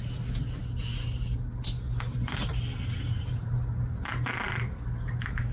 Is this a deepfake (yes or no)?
no